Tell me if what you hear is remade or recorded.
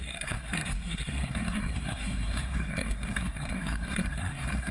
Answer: remade